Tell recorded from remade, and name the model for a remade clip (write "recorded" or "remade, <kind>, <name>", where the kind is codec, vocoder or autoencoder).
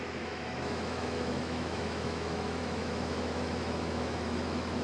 remade, autoencoder, DAC-VAE